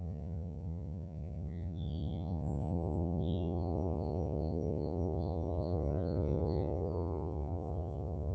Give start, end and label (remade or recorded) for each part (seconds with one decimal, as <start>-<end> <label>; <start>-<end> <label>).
0.0-8.3 remade